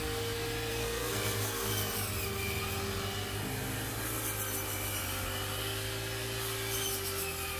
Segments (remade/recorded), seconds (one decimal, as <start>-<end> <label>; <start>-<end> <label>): 0.0-0.7 recorded; 0.7-1.7 remade; 1.7-7.6 recorded